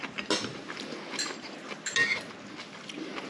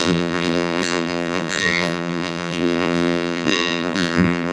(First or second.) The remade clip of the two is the second